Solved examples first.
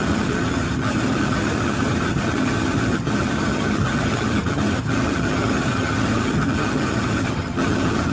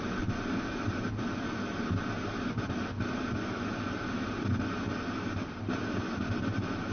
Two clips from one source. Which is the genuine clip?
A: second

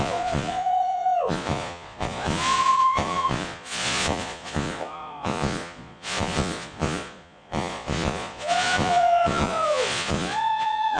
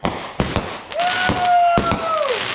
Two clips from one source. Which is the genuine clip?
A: second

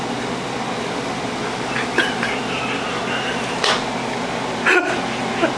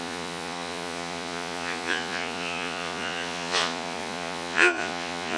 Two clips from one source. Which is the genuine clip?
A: first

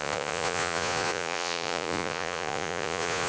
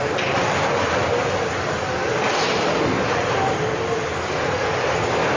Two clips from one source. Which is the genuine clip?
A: second